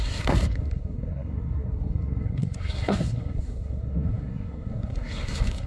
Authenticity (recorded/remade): remade